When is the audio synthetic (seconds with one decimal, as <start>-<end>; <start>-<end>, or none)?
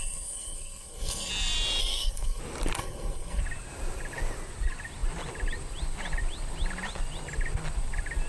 0.0-1.3; 1.8-2.4; 2.8-3.4